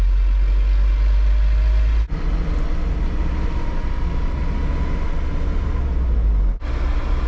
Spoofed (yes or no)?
no